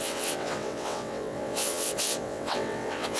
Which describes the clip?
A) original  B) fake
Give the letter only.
B